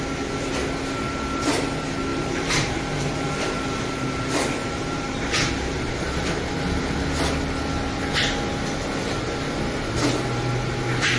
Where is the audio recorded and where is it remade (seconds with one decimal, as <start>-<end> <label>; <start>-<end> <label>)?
0.0-2.1 recorded; 2.1-7.3 remade; 7.3-11.2 recorded